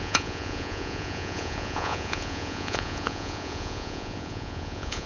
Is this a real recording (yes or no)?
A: no